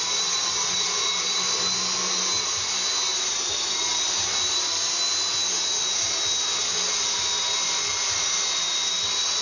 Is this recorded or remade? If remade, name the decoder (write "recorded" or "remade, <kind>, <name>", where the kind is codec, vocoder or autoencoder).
recorded